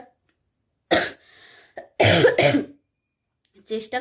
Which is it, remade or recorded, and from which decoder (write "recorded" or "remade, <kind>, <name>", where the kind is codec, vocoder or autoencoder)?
recorded